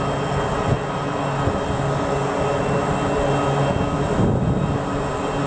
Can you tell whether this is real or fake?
real